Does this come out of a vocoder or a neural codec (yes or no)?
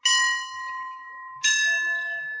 no